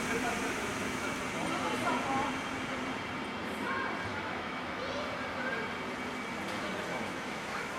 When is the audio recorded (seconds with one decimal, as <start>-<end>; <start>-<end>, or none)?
0.0-0.6; 1.2-4.1; 4.8-6.9